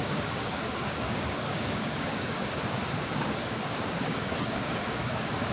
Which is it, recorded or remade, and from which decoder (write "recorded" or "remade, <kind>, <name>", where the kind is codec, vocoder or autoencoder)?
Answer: remade, codec, DAC